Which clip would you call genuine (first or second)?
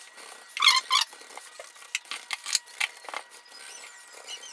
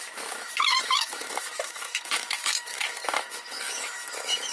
first